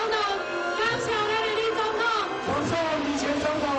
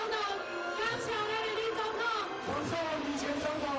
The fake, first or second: second